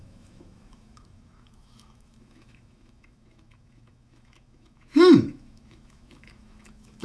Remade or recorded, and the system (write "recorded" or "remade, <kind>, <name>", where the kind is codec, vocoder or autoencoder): remade, autoencoder, DAC-VAE